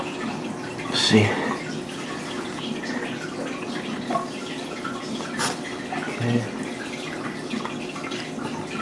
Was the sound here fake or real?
real